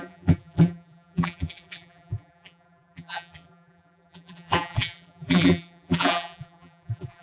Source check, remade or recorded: remade